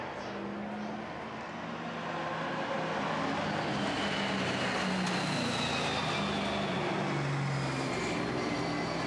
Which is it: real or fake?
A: real